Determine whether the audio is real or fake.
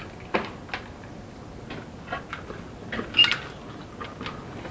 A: real